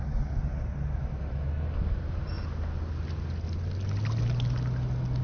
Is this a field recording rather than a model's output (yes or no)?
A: yes